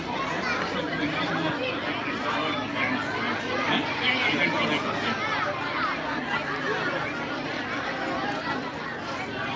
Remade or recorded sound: recorded